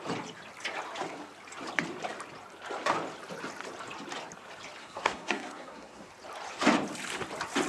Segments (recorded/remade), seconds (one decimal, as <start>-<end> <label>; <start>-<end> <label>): 0.0-4.8 recorded; 4.8-6.1 remade; 6.1-7.7 recorded